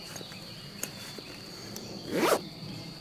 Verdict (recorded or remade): remade